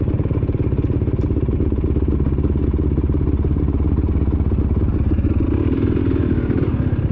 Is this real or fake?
real